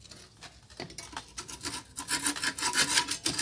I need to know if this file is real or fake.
real